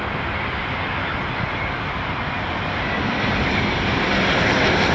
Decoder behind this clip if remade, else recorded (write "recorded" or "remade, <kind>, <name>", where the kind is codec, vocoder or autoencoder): recorded